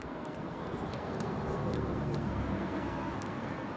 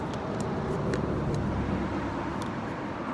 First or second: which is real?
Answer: second